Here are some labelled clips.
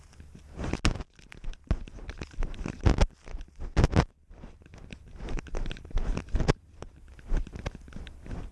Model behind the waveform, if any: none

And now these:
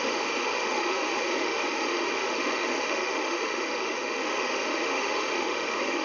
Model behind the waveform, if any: autoencoder, DAC-VAE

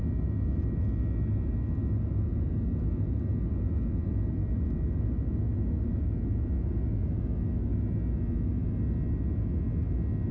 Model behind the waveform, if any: none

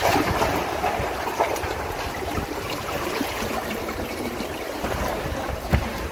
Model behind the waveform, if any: vocoder, BigVGAN v2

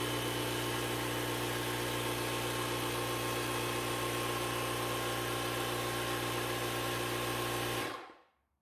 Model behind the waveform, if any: none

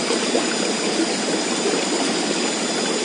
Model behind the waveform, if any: none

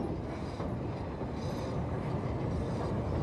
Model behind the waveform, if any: none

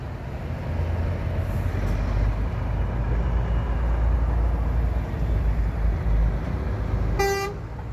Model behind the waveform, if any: none